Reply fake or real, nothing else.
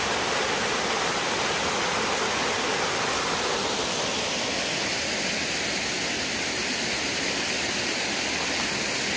real